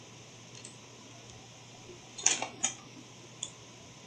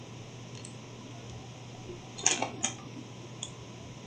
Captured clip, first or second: second